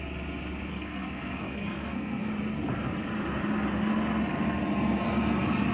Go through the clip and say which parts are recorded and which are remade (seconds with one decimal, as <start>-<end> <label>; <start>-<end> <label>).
0.0-0.7 recorded; 0.7-2.3 remade; 2.3-5.7 recorded